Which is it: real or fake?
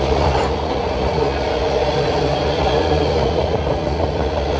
fake